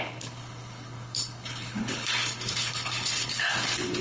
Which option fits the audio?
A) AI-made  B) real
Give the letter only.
A